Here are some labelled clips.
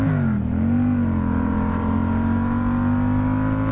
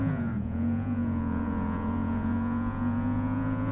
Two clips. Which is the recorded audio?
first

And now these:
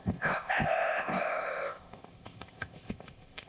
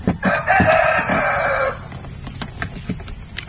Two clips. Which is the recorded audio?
second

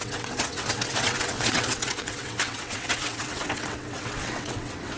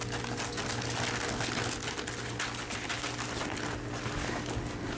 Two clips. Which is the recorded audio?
second